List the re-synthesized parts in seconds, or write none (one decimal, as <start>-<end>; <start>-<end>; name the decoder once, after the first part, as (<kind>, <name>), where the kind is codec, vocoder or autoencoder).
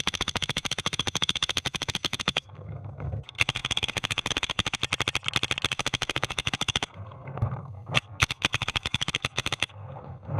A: 0.0-4.8 (codec, SNAC); 5.7-10.4